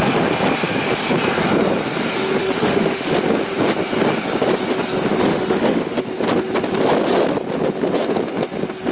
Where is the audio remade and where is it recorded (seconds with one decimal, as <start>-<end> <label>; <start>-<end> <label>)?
0.0-2.4 recorded; 2.4-3.2 remade; 3.2-5.3 recorded; 5.3-6.0 remade; 6.0-8.9 recorded